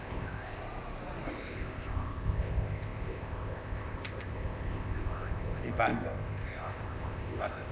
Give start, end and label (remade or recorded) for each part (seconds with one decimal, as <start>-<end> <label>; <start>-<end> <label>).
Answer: 0.0-0.6 remade; 0.6-1.3 recorded; 1.3-7.7 remade